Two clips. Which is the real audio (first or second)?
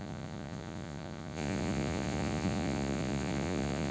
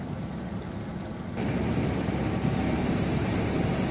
second